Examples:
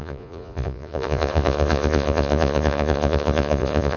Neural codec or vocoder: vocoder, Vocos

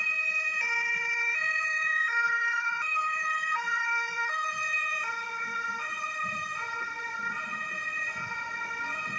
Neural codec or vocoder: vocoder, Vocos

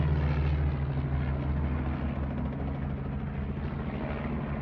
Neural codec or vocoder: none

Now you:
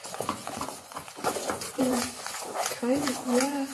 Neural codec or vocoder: vocoder, Vocos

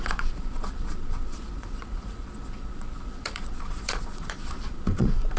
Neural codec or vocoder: vocoder, Vocos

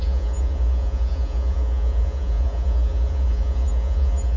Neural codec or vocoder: vocoder, Vocos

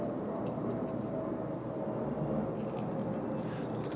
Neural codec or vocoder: none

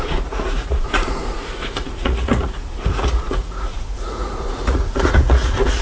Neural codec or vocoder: vocoder, Vocos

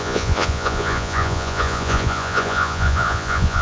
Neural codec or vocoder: vocoder, Vocos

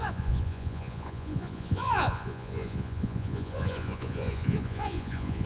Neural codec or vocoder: vocoder, Vocos